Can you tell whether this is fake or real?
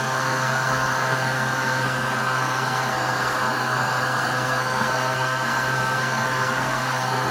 fake